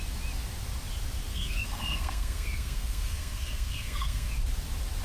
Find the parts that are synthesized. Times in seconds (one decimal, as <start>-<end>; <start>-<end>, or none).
1.3-4.3